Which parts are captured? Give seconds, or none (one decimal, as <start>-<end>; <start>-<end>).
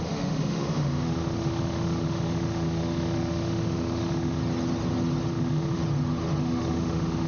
4.4-5.3; 5.8-6.4